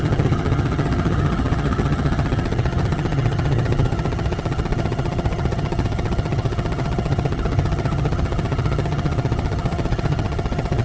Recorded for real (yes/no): no